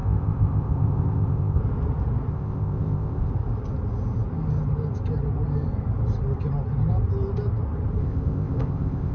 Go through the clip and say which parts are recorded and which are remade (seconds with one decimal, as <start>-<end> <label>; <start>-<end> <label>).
0.0-1.6 remade; 1.6-2.3 recorded; 2.3-3.3 remade; 3.3-8.0 recorded; 8.0-9.1 remade